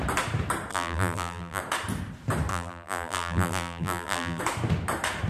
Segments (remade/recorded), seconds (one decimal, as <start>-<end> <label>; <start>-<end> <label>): 0.0-0.7 recorded; 0.7-1.6 remade; 1.6-2.5 recorded; 2.5-4.4 remade; 4.4-5.3 recorded